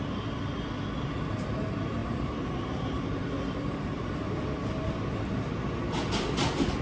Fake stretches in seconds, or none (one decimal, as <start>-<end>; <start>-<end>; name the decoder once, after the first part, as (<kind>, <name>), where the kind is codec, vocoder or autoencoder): 2.0-4.1 (vocoder, BigVGAN v2)